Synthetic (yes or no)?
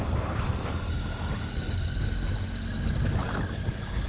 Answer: no